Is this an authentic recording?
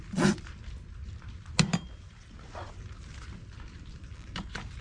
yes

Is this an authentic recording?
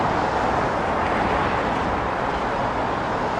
yes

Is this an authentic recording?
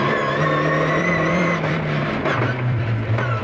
no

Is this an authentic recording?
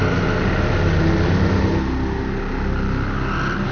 yes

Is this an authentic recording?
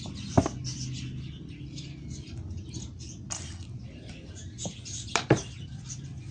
yes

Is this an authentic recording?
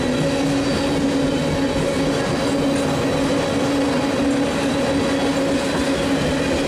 yes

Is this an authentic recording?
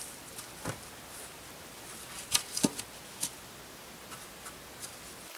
yes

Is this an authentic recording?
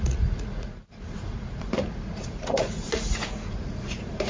no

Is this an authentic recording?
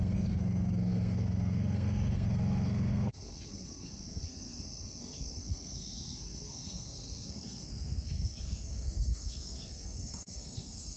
no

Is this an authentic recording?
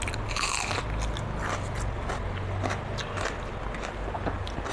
yes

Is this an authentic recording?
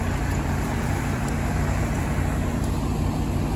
no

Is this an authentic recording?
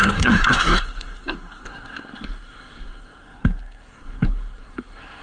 no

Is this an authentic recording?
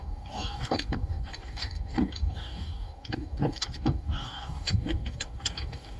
no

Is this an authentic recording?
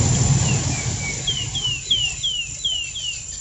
yes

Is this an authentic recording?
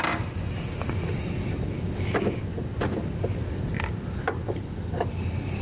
yes